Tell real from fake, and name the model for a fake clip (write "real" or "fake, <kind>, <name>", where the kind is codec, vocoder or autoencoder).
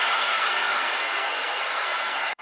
fake, codec, SNAC